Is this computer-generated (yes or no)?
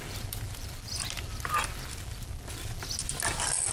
no